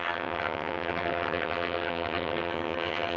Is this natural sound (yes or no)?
no